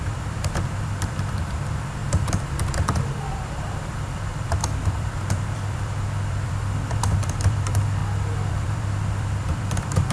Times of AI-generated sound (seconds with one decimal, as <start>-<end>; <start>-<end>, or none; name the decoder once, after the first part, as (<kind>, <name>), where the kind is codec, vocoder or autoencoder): 0.0-2.0 (vocoder, BigVGAN v2); 3.3-8.0; 8.5-10.1

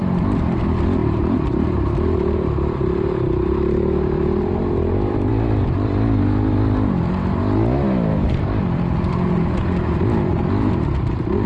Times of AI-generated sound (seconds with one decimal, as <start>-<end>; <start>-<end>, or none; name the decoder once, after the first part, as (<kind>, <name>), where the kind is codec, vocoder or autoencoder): 1.0-5.3 (vocoder, BigVGAN v2)